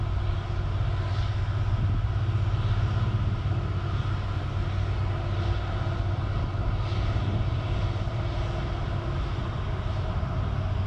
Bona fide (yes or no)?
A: yes